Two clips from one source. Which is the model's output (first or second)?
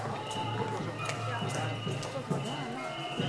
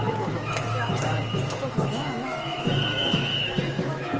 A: second